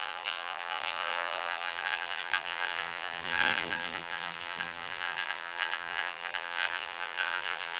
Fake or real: fake